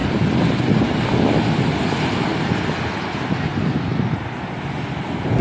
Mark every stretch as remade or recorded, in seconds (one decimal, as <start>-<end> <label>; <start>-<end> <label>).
0.0-5.4 recorded